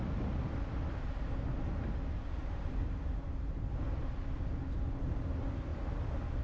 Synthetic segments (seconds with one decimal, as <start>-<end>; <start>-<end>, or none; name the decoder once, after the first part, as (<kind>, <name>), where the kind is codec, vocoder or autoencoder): 2.4-2.9 (vocoder, BigVGAN v2)